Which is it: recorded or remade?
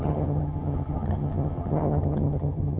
remade